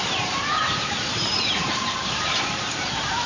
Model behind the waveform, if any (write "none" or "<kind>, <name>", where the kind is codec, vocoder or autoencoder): vocoder, BigVGAN v2